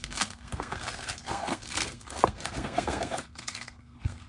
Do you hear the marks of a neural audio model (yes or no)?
yes